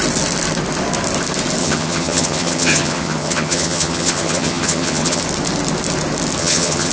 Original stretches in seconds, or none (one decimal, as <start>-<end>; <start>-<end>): 0.0-1.6; 5.2-6.4